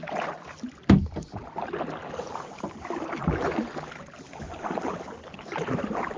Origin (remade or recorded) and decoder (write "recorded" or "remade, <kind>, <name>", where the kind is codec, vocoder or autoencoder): recorded